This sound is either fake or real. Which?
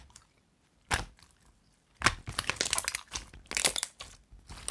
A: real